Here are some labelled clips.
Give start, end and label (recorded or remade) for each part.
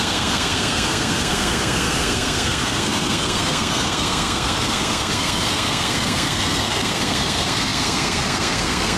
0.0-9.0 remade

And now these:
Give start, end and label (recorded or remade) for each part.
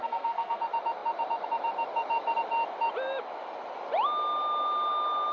0.0-0.6 remade; 0.6-5.3 recorded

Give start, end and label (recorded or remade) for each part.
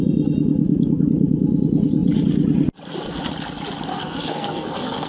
0.0-3.9 recorded; 3.9-5.1 remade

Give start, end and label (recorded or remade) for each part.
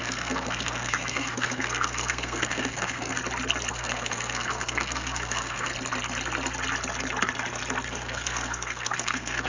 0.0-3.2 remade; 3.2-3.7 recorded; 3.7-5.7 remade; 5.7-7.9 recorded; 7.9-9.5 remade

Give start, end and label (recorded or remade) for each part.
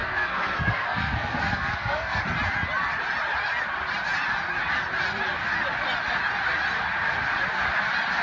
0.0-2.2 remade; 2.2-8.2 recorded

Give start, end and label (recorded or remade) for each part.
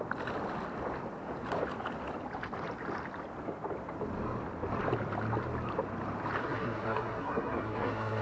0.0-6.4 recorded; 6.4-8.2 remade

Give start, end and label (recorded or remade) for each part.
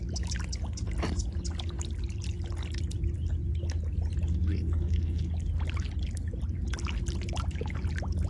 0.0-4.5 recorded; 4.5-5.3 remade; 5.3-8.3 recorded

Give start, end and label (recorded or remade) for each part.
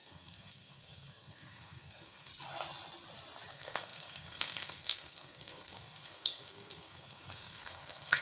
0.0-2.3 remade; 2.3-3.5 recorded; 3.5-8.2 remade